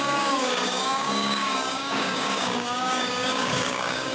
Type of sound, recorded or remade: remade